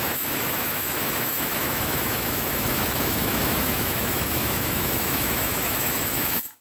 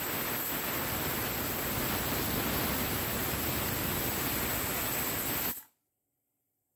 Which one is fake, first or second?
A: first